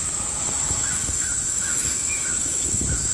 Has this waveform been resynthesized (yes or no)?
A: yes